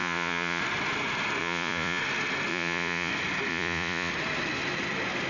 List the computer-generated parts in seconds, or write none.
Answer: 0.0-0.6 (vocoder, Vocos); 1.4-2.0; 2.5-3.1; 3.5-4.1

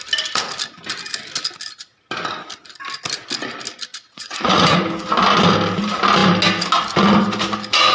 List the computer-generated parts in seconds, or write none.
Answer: 3.9-4.8 (vocoder, Vocos)

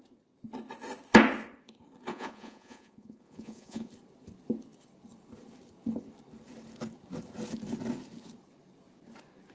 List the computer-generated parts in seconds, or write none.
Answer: 2.1-3.9 (vocoder, Vocos)

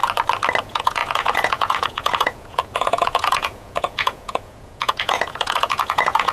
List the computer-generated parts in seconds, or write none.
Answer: 0.6-6.3 (vocoder, Vocos)

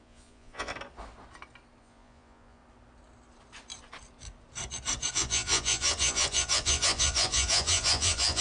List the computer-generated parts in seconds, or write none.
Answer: 0.0-0.7 (vocoder, Vocos); 1.8-2.6; 5.1-8.4